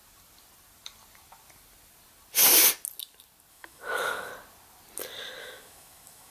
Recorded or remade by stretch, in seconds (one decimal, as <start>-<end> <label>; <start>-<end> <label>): 0.0-3.5 recorded; 3.5-4.3 remade; 4.3-5.4 recorded; 5.4-6.3 remade